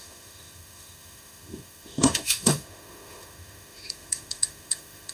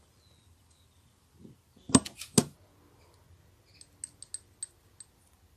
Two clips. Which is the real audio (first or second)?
second